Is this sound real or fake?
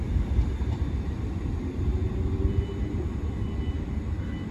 real